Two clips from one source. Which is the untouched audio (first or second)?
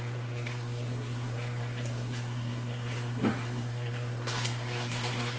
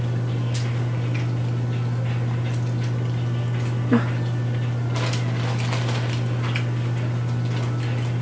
second